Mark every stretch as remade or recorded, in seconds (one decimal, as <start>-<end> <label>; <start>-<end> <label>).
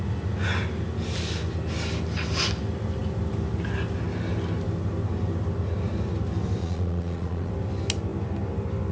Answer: 0.0-6.6 recorded; 6.6-7.5 remade; 7.5-8.9 recorded